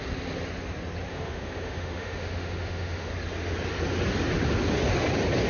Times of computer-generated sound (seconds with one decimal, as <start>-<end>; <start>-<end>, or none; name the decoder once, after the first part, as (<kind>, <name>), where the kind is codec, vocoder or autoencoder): 1.1-3.1 (autoencoder, DAC-VAE)